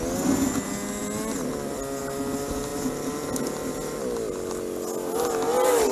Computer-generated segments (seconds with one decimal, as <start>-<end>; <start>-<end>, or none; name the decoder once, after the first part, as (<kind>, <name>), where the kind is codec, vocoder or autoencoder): none